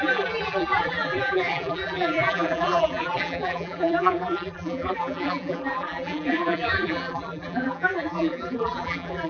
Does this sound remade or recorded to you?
remade